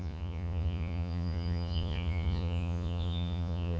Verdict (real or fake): fake